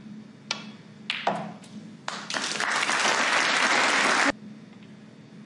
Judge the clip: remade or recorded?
recorded